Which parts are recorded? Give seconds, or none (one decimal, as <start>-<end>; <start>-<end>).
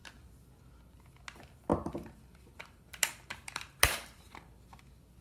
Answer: 0.0-1.7; 4.8-5.2